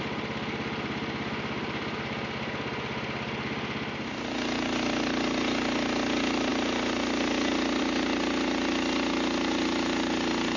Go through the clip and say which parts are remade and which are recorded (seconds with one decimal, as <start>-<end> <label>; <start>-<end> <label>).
0.0-10.6 recorded